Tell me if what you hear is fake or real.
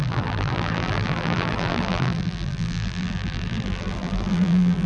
fake